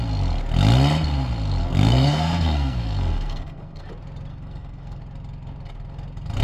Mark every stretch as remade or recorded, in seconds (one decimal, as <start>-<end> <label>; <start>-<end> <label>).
0.0-1.6 recorded; 1.6-3.9 remade; 3.9-4.3 recorded; 4.3-5.0 remade; 5.0-6.4 recorded